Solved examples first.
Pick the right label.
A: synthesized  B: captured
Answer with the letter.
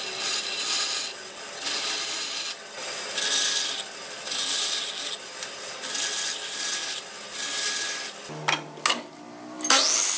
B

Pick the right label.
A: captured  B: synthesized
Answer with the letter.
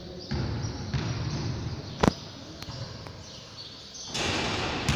A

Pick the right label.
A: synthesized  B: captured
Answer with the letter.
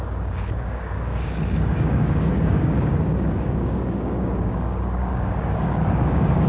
A